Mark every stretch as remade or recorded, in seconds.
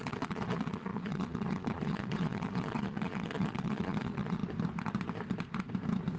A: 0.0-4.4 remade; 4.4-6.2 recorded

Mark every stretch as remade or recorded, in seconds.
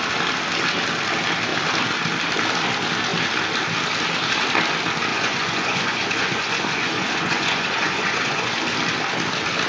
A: 0.0-5.1 recorded; 5.1-8.5 remade; 8.5-9.7 recorded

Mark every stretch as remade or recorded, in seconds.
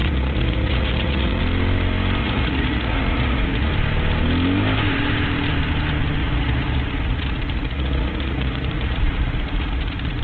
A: 0.0-1.4 remade; 1.4-2.2 recorded; 2.2-3.7 remade; 3.7-6.2 recorded; 6.2-10.2 remade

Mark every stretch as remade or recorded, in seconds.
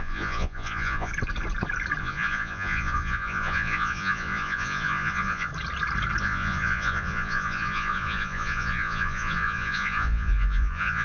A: 0.0-1.1 remade; 1.1-2.0 recorded; 2.0-5.5 remade; 5.5-6.2 recorded; 6.2-11.0 remade